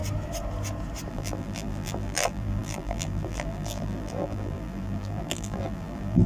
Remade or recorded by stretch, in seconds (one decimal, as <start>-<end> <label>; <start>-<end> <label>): 0.0-1.1 recorded; 1.1-6.3 remade